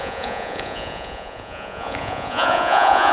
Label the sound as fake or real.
fake